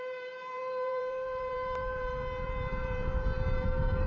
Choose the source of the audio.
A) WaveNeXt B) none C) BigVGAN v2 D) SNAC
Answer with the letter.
C